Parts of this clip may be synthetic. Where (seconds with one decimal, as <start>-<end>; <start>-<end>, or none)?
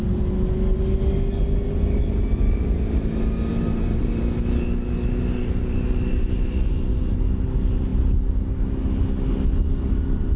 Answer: 3.5-4.2